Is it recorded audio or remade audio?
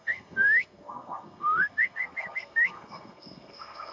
remade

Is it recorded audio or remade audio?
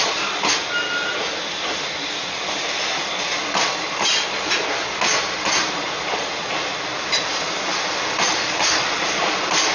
recorded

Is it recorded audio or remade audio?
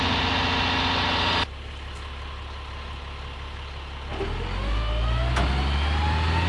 recorded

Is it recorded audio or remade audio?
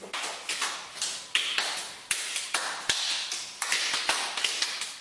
recorded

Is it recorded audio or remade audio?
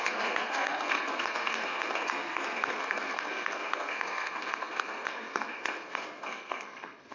remade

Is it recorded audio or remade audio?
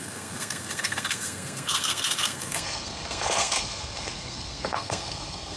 remade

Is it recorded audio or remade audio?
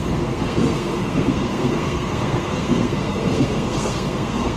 remade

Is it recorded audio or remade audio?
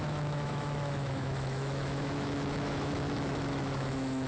remade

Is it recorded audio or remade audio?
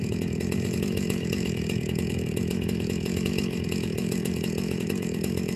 remade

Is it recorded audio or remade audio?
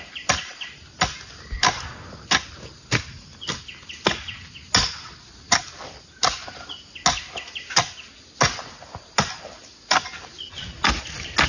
recorded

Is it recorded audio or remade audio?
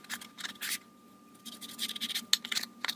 recorded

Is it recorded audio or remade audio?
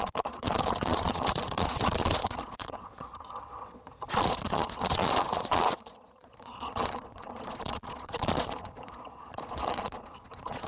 remade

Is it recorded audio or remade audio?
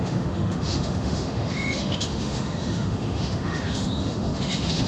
remade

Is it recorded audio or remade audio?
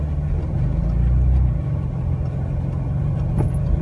recorded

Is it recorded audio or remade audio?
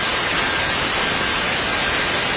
recorded